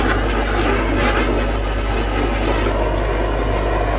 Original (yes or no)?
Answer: yes